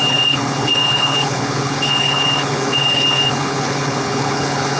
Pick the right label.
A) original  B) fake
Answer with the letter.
B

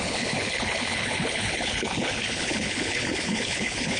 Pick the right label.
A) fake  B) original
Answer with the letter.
A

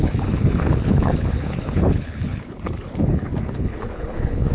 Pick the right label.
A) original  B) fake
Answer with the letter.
B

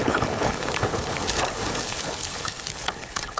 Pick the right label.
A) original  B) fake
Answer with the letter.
B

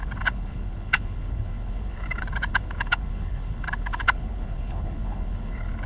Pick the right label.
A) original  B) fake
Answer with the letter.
B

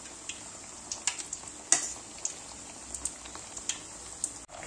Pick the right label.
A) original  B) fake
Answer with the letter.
A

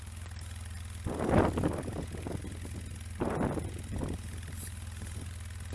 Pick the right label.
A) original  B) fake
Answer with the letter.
A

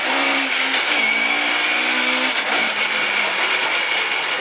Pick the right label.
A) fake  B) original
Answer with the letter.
B